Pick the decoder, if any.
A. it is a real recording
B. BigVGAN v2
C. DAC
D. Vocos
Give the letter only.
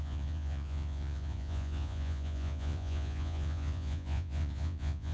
D